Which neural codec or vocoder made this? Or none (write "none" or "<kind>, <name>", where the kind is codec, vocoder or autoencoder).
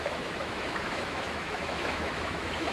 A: autoencoder, DAC-VAE